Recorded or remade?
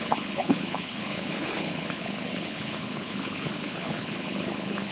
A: remade